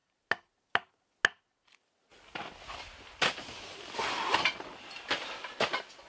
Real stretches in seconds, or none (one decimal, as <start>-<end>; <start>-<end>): 0.0-6.1